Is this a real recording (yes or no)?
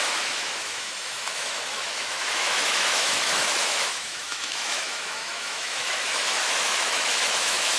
no